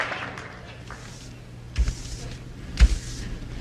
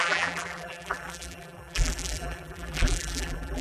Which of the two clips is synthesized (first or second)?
second